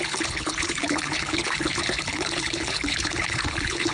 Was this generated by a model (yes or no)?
yes